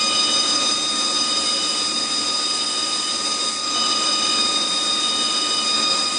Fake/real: real